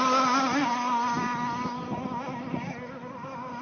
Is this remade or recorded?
recorded